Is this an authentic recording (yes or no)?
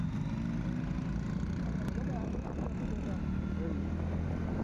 yes